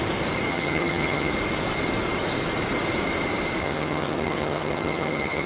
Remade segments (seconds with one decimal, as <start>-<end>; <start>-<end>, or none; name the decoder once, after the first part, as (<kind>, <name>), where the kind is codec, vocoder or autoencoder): 0.5-1.3 (vocoder, HiFi-GAN); 3.6-5.5